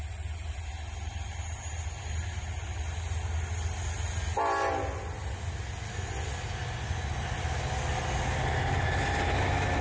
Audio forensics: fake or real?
real